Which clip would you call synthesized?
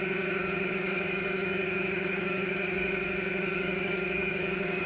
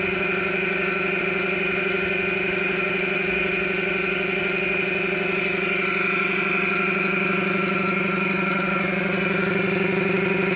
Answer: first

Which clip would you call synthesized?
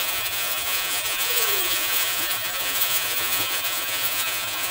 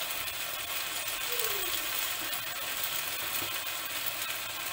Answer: first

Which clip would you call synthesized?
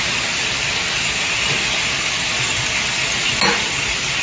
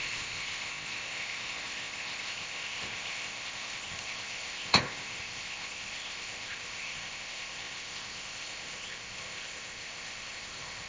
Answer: second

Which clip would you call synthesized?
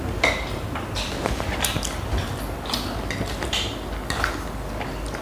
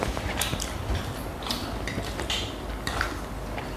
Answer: second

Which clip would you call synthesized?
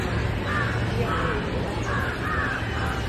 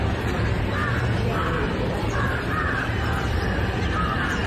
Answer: second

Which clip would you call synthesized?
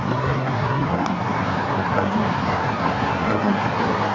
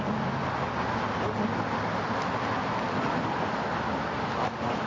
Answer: first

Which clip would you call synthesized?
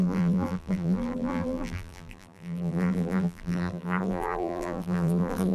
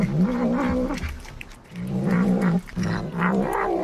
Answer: first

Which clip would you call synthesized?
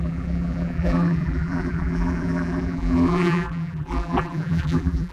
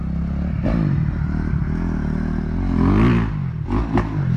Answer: first